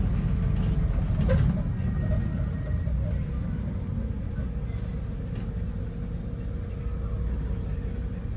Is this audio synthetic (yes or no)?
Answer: no